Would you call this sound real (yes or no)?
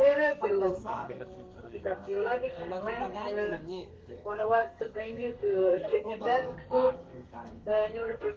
no